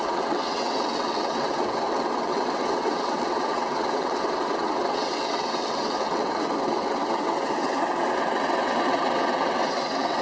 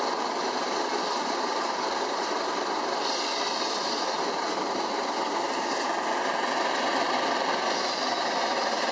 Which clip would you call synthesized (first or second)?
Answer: first